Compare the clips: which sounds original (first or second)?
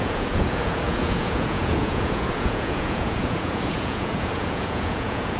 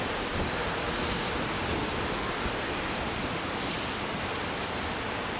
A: second